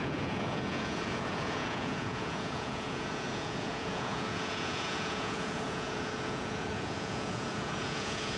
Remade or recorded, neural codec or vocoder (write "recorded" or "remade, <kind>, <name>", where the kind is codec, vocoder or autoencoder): remade, vocoder, Vocos